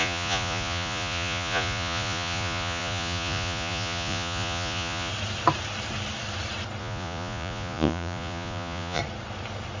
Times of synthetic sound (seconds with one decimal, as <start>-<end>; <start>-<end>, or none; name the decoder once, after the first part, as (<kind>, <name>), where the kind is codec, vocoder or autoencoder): 0.0-5.1 (vocoder, Vocos); 6.8-9.0